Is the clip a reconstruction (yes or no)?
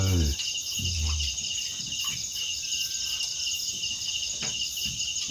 no